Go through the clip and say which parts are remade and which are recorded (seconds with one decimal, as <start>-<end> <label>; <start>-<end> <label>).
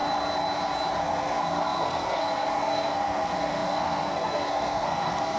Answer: 0.0-1.0 recorded; 1.0-5.4 remade